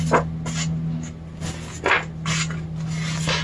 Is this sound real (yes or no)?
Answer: yes